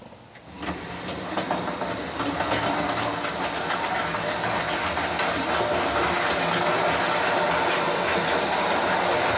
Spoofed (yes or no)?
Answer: no